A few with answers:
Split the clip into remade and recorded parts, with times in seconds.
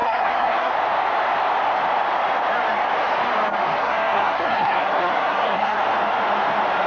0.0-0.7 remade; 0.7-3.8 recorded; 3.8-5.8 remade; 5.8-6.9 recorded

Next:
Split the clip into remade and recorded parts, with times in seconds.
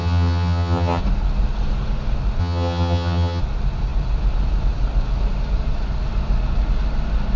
0.0-1.0 remade; 1.0-2.4 recorded; 2.4-3.4 remade; 3.4-7.4 recorded